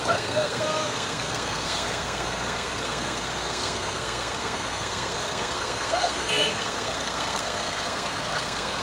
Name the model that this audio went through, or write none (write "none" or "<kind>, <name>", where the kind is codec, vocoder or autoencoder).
codec, SNAC